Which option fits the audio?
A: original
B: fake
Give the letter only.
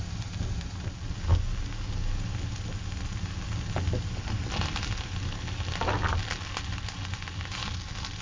A